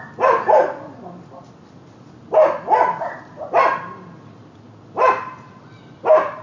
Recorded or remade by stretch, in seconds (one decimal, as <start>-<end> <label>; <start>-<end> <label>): 0.0-6.4 remade